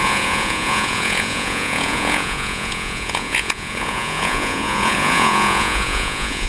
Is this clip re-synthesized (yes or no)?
yes